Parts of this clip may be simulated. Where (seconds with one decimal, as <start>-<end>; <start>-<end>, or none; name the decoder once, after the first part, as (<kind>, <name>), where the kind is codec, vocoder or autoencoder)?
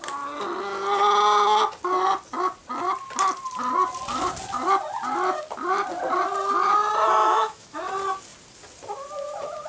7.2-7.8 (autoencoder, DAC-VAE)